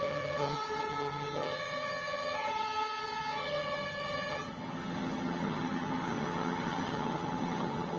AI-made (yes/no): yes